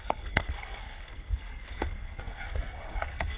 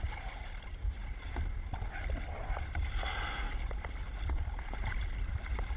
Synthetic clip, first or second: first